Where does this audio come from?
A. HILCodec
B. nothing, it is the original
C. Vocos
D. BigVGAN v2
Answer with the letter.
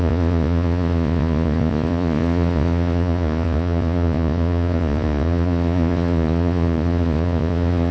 C